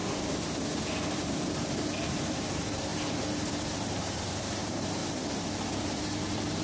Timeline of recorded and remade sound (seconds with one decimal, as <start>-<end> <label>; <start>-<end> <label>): 0.0-2.1 recorded; 2.1-2.9 remade; 2.9-3.5 recorded; 3.5-5.0 remade; 5.0-5.7 recorded; 5.7-6.6 remade